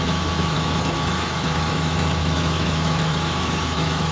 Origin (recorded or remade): remade